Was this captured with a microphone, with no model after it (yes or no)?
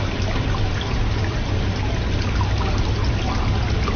yes